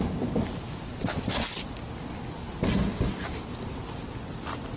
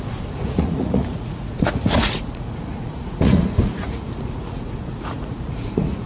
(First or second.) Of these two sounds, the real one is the first